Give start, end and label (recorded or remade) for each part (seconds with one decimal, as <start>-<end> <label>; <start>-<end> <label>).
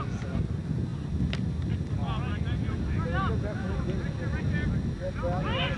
0.0-5.8 recorded